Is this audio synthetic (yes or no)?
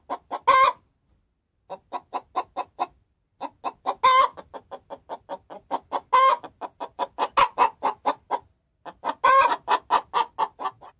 no